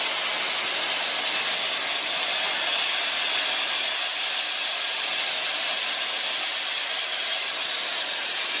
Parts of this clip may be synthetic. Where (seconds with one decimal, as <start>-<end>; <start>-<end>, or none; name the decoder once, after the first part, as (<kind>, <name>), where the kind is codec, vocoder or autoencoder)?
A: none